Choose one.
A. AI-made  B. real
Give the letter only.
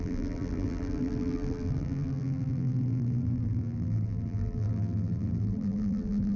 A